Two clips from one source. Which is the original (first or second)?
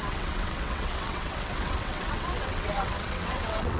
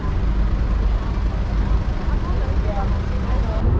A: second